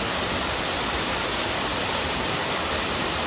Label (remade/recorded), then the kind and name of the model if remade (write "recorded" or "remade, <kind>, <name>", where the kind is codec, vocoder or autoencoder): recorded